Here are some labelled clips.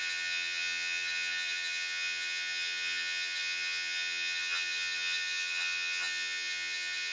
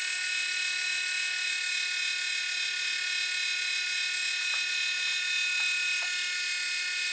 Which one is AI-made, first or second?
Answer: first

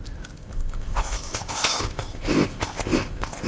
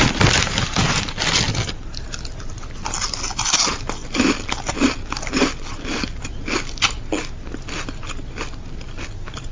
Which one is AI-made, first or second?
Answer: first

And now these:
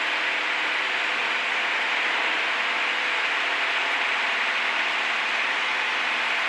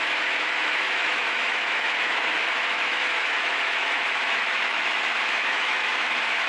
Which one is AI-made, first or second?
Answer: second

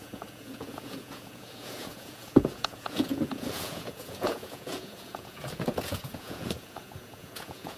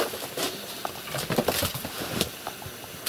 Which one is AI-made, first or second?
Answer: first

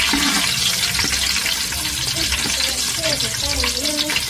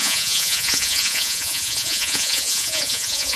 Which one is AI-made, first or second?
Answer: second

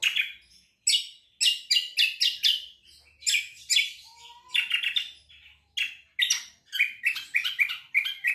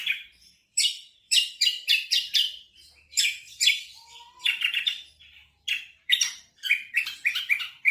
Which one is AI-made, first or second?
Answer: second